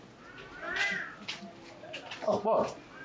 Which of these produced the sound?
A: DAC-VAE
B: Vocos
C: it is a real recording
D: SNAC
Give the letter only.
C